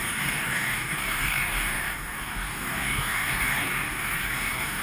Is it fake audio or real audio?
fake